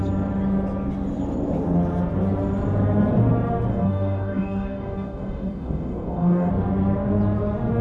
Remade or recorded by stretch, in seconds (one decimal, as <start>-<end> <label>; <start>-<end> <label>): 0.0-3.7 recorded; 3.7-6.5 remade; 6.5-7.8 recorded